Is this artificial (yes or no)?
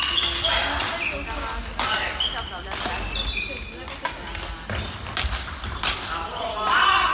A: no